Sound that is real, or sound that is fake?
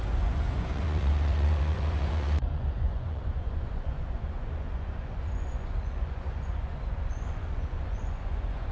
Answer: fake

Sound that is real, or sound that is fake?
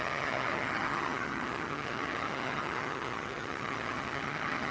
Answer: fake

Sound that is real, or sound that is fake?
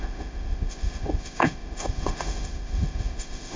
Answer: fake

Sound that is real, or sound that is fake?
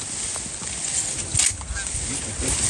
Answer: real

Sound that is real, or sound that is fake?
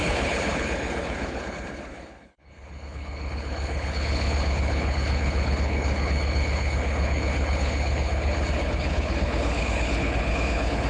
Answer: fake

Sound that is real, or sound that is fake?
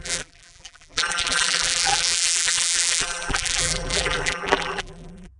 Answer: fake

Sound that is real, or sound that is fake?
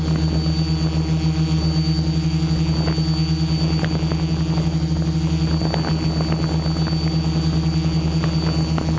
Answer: real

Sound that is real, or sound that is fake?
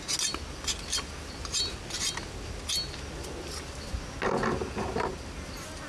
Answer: real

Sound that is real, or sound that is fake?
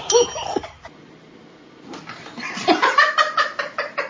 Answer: real